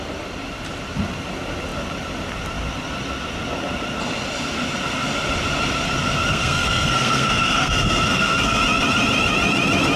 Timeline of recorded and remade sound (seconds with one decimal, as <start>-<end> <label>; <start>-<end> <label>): 0.0-6.3 recorded; 6.3-8.6 remade; 8.6-10.0 recorded